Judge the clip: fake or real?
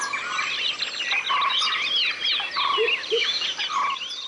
real